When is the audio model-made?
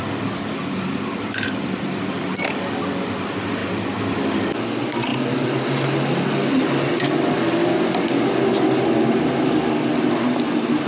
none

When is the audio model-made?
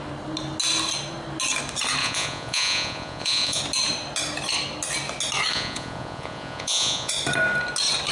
2.0-3.6; 5.5-7.1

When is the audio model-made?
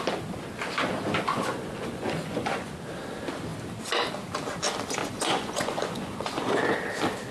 1.3-2.7; 5.0-6.4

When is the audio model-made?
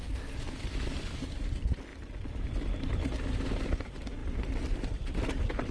none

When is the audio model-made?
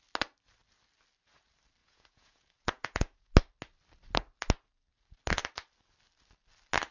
1.8-3.3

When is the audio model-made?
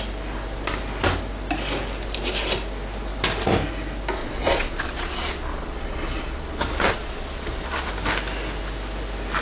4.2-7.9